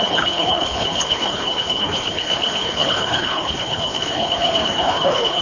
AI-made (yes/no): yes